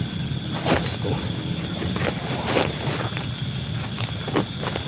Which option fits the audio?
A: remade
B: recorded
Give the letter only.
B